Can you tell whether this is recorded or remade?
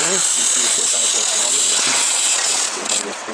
remade